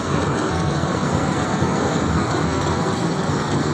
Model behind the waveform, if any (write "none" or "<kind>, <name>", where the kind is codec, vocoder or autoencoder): codec, SNAC